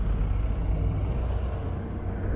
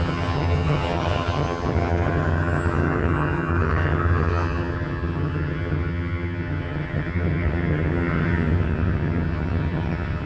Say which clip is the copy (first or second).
second